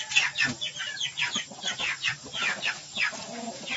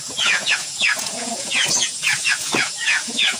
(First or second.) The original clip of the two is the first